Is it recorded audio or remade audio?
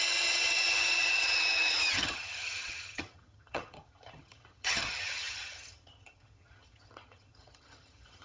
remade